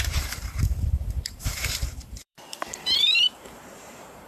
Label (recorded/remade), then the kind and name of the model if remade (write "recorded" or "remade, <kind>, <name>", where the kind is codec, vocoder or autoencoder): remade, vocoder, BigVGAN v2